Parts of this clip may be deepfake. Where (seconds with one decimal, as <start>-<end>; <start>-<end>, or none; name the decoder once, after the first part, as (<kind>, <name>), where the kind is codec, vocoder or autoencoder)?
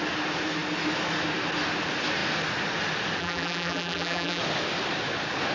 3.2-4.4 (vocoder, BigVGAN v2)